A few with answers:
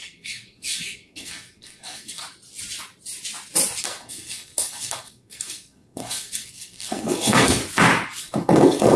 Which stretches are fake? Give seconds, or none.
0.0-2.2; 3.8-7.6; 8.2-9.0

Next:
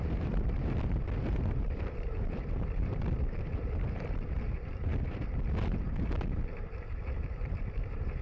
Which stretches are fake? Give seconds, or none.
0.0-8.2